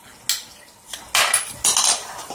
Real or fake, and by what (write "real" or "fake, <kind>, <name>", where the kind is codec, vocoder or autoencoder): real